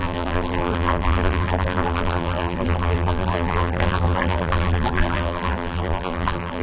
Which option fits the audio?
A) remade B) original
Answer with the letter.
A